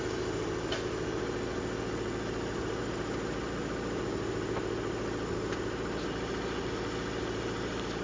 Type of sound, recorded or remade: recorded